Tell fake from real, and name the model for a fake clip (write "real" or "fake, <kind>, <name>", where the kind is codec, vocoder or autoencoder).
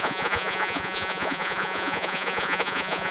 fake, vocoder, Vocos